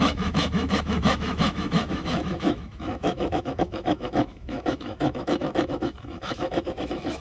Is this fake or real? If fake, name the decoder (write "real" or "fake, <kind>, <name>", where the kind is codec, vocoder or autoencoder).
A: fake, autoencoder, DAC-VAE